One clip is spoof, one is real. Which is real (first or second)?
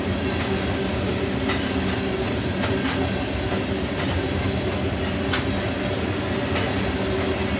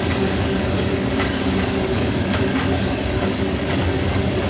first